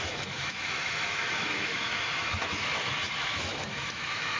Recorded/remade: remade